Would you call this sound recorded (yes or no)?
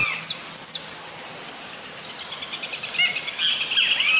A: yes